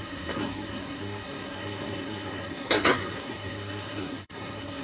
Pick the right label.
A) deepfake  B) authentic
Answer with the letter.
A